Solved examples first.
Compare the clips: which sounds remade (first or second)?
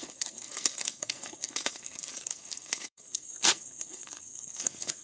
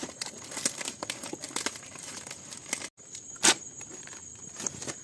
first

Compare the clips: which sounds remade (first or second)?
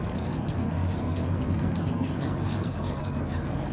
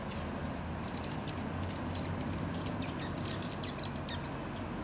first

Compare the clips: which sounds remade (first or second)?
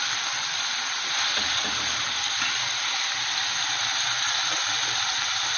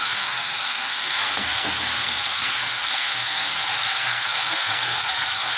second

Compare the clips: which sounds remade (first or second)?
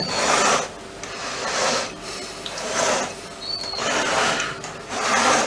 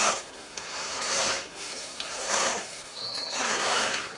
second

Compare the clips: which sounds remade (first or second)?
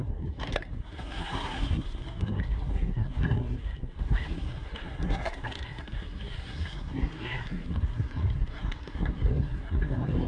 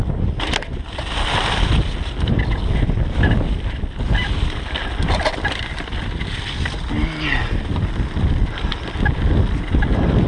first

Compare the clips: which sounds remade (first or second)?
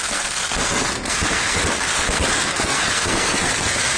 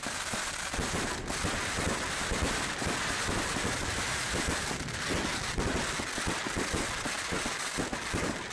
first